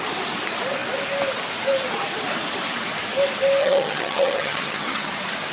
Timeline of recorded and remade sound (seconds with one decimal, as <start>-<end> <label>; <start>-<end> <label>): 0.0-3.6 recorded; 3.6-5.1 remade; 5.1-5.5 recorded